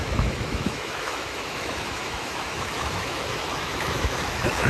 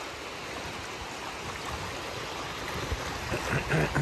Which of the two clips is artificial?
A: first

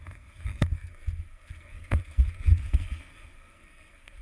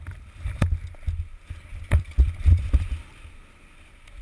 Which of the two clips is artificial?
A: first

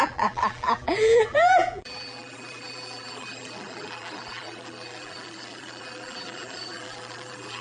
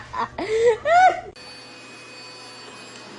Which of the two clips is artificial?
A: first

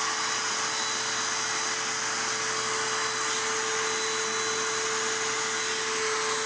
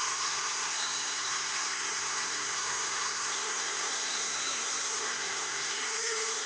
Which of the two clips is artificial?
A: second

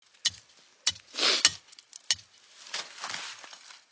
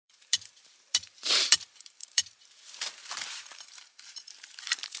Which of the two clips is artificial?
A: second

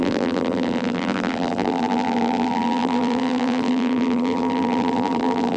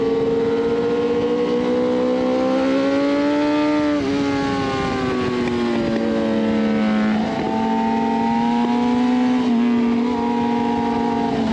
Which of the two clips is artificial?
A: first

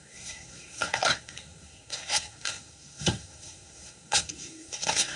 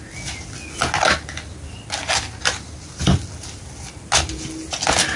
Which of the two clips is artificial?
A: first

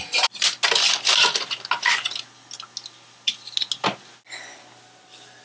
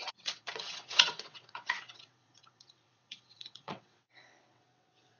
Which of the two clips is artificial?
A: second